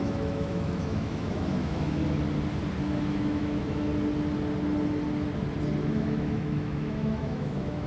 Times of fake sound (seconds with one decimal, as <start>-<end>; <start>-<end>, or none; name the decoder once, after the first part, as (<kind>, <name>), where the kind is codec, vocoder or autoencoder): 0.0-2.0 (autoencoder, DAC-VAE); 2.8-3.9; 5.9-7.9